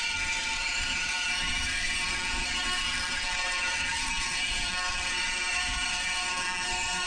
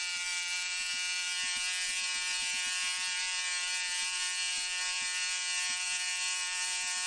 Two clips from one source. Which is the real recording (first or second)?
second